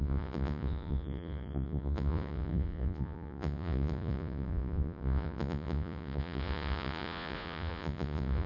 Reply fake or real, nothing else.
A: fake